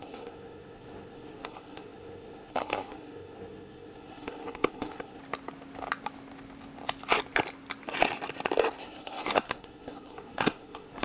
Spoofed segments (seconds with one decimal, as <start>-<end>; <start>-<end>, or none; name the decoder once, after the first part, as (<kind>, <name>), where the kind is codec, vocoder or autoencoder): 0.0-5.2 (codec, SNAC); 8.8-11.0